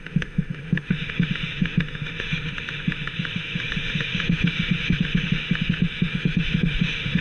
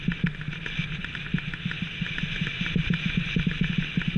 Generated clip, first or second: first